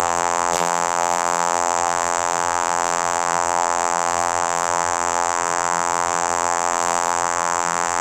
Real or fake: fake